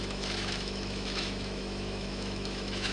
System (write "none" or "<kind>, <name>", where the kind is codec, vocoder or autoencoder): autoencoder, DAC-VAE